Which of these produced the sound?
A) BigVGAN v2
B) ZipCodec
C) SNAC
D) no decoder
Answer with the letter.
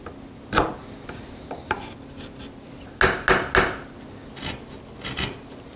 D